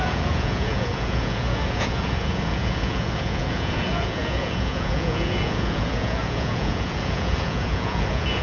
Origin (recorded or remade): remade